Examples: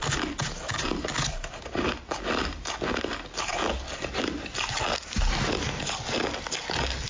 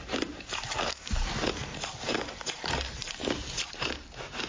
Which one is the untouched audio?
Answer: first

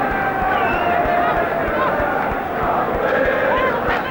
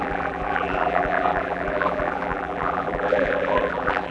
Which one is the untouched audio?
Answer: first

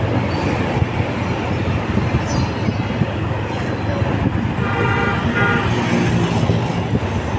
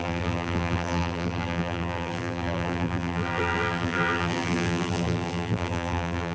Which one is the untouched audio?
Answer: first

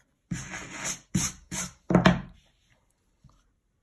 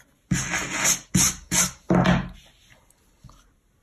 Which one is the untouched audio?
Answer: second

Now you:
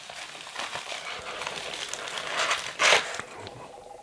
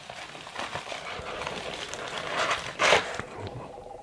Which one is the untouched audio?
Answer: first